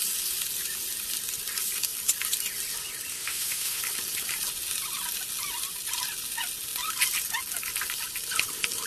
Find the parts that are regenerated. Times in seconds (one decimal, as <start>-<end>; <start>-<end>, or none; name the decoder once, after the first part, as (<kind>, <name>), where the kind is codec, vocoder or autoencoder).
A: 3.1-3.8 (autoencoder, DAC-VAE)